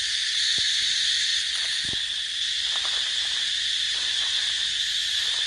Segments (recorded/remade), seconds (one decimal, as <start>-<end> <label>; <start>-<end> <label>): 0.0-5.5 recorded